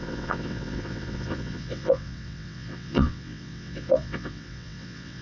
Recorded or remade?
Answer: remade